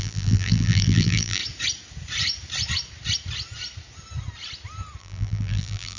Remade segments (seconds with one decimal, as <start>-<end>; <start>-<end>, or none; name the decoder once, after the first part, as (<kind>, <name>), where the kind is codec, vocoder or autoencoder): 0.0-1.4 (vocoder, BigVGAN v2); 5.0-6.0